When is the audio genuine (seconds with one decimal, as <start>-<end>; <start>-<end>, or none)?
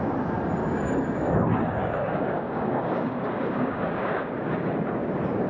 0.0-0.6; 1.3-1.8; 4.7-5.5